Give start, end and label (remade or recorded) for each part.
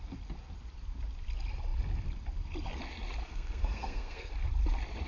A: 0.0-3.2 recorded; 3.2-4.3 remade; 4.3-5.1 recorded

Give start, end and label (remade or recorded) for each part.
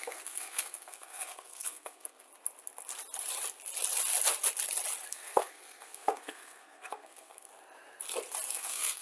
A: 0.0-2.3 remade; 2.3-5.1 recorded; 5.1-7.5 remade; 7.5-8.5 recorded; 8.5-9.0 remade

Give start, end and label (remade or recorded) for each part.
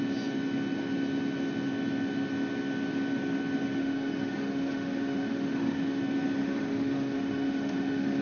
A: 0.0-3.8 recorded; 3.8-6.0 remade; 6.0-6.4 recorded; 6.4-8.2 remade